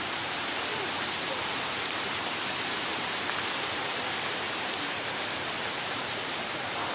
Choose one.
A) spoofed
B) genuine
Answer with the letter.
A